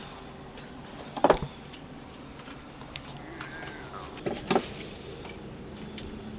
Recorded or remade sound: recorded